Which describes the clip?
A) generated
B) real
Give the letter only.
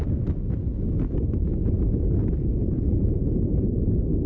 A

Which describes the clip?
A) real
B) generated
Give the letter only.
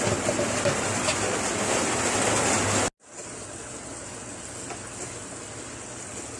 A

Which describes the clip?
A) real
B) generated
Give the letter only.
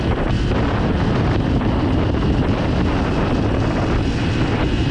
A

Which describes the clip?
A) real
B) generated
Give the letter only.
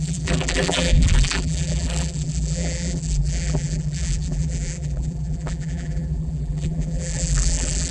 B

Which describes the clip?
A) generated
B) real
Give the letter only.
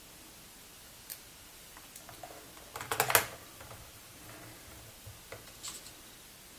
B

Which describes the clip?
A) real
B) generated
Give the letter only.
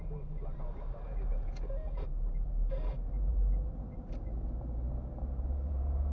B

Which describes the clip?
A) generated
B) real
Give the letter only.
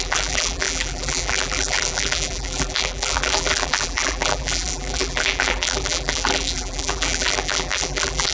A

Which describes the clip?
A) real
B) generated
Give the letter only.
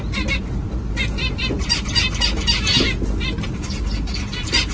A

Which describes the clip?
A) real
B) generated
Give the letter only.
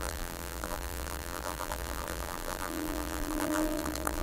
B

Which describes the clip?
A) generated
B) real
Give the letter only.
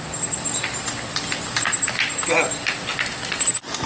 B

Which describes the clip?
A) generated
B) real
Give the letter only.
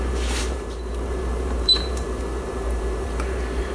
A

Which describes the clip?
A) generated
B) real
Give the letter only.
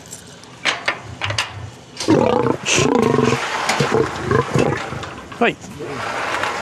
B